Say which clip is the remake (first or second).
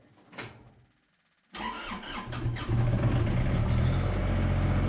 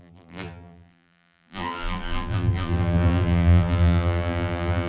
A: second